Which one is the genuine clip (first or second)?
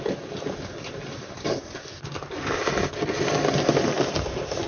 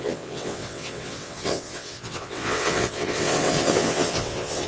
first